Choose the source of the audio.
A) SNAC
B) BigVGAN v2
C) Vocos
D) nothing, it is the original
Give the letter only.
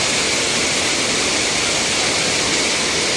D